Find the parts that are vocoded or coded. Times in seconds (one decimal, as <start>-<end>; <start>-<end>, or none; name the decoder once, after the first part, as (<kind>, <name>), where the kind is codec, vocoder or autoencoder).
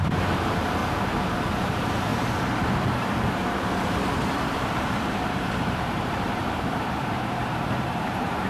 0.0-0.8 (vocoder, BigVGAN v2); 1.4-8.5